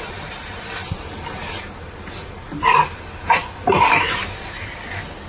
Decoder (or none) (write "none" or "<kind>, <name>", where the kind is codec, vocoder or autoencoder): none